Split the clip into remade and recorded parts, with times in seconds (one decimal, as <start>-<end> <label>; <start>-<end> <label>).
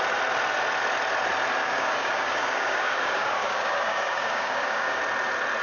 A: 0.0-1.6 recorded; 1.6-5.0 remade; 5.0-5.6 recorded